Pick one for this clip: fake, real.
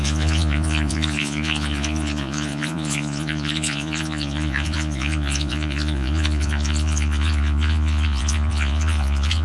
fake